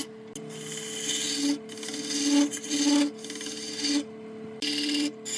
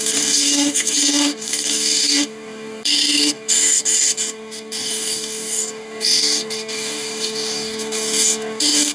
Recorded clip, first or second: first